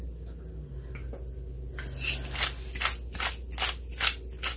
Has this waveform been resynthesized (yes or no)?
no